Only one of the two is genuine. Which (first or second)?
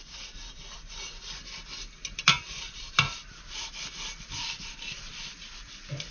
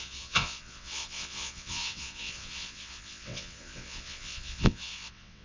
first